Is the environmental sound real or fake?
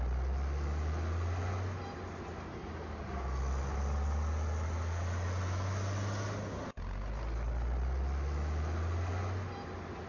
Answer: real